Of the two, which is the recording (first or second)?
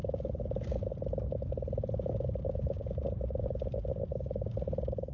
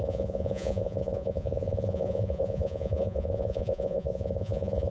first